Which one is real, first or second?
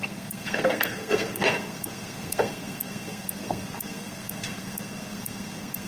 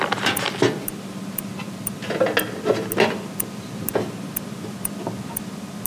second